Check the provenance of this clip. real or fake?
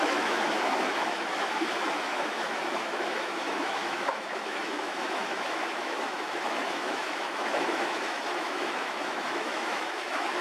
fake